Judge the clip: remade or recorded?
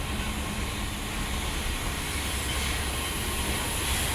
recorded